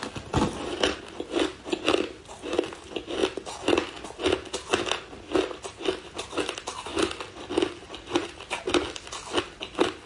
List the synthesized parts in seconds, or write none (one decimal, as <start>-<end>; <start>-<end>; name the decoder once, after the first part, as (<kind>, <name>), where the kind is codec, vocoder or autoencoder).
none